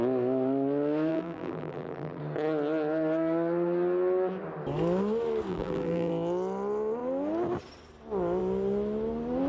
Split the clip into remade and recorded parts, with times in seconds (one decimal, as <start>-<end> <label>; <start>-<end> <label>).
0.0-1.1 recorded; 1.1-2.2 remade; 2.2-5.5 recorded; 5.5-6.1 remade; 6.1-9.5 recorded

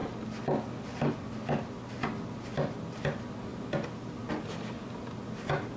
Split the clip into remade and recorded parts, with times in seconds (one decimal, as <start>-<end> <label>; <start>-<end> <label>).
0.0-5.8 recorded